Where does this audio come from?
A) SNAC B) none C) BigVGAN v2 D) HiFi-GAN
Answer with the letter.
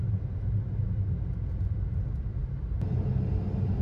B